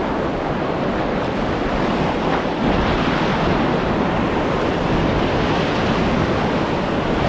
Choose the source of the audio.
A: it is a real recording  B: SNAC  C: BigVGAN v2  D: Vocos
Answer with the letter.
A